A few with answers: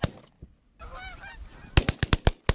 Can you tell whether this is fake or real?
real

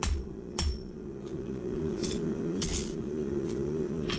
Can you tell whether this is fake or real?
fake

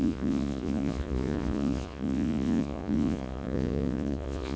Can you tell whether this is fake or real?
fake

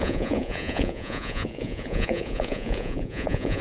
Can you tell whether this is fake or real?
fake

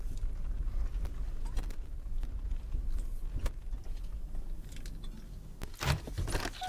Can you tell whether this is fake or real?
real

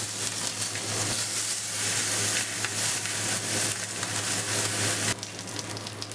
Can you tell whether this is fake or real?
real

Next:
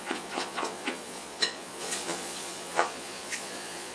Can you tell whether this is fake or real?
fake